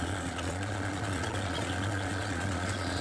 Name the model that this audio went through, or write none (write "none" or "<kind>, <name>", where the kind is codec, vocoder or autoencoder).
vocoder, Vocos